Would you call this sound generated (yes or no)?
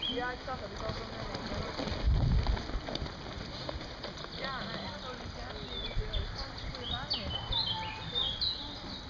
no